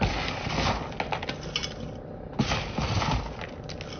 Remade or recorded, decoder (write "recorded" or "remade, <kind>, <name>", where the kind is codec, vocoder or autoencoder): recorded